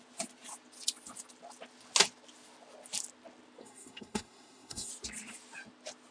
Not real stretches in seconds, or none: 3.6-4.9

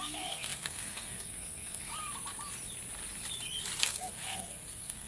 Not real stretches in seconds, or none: 0.0-1.9; 3.8-5.1

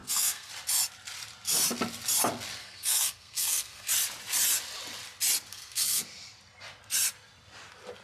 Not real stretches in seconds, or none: 0.0-0.5; 2.6-3.9; 5.5-6.0

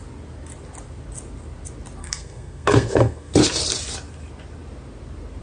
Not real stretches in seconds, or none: 2.0-3.3

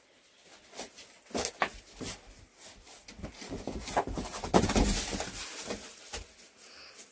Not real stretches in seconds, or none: none

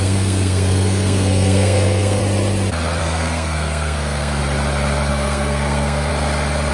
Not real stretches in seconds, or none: 0.0-2.2; 3.0-4.4; 5.1-6.1

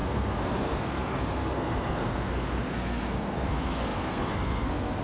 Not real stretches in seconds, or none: 0.0-5.0